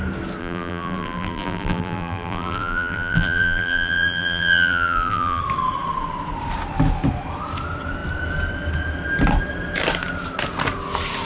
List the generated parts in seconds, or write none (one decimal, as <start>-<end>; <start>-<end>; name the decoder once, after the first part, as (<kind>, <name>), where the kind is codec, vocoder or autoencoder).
0.4-5.4 (vocoder, BigVGAN v2)